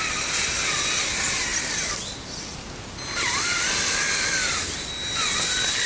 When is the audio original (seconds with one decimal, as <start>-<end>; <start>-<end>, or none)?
0.0-5.9